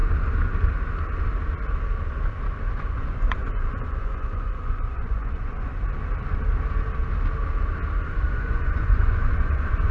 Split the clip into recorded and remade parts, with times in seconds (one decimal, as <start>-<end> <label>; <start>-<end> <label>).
0.0-2.7 recorded; 2.7-5.7 remade; 5.7-8.3 recorded; 8.3-9.9 remade